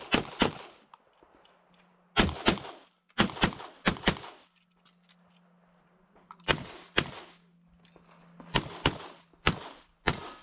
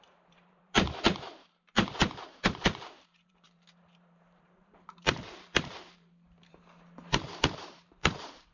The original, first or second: first